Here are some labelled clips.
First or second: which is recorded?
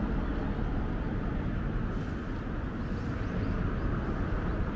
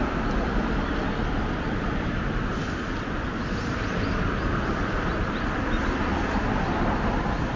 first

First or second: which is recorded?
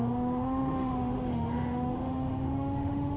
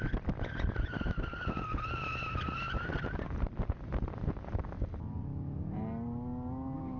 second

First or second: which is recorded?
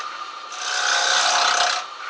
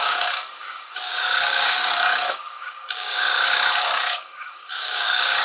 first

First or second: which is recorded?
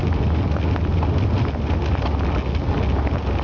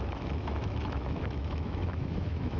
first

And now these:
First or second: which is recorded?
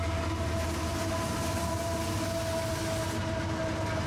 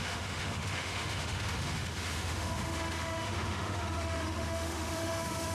first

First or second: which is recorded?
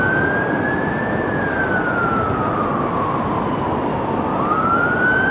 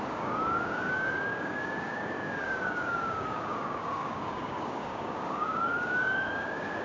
first